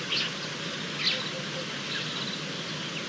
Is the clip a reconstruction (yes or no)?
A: no